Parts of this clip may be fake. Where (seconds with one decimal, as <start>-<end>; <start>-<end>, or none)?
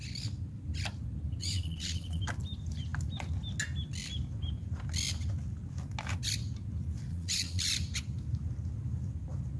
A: 1.4-2.2; 7.1-7.7